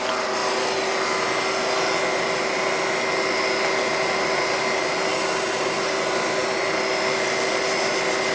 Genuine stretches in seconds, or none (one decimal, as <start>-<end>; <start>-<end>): 0.0-5.1; 5.8-8.3